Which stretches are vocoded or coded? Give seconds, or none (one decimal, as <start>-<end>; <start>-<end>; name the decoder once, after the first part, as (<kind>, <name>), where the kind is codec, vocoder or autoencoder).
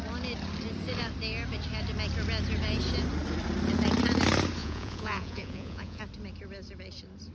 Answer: 4.6-6.0 (vocoder, Vocos)